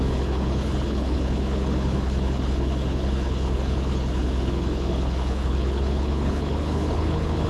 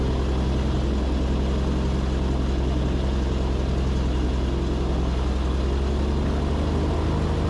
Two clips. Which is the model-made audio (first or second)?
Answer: first